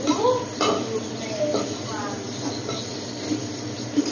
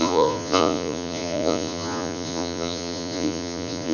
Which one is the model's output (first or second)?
second